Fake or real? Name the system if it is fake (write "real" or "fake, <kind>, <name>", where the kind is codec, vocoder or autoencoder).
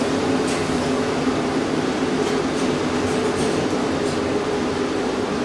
real